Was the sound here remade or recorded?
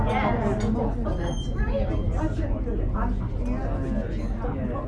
recorded